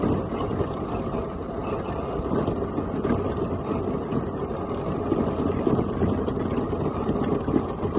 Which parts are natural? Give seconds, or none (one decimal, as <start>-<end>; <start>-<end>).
0.0-8.0